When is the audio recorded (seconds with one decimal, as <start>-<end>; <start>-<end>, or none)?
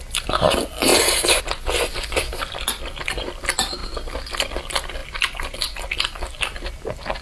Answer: 0.0-7.2